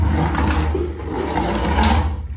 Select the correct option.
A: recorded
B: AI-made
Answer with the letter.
A